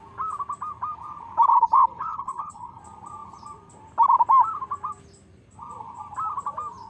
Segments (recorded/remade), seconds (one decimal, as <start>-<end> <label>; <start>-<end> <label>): 0.0-1.5 recorded; 1.5-2.8 remade; 2.8-6.9 recorded